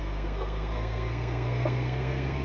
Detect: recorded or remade remade